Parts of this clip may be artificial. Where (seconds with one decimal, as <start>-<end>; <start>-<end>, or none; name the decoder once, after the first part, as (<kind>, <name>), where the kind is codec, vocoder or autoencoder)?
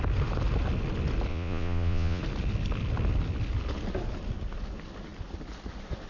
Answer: 1.3-2.2 (vocoder, Vocos)